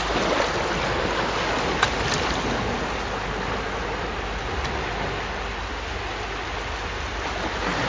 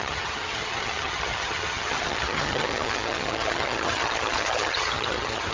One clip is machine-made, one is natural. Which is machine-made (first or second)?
second